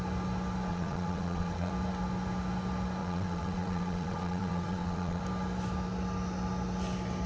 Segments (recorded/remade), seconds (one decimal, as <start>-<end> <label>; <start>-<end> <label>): 0.0-0.7 recorded; 0.7-1.7 remade; 1.7-3.0 recorded; 3.0-5.2 remade; 5.2-7.3 recorded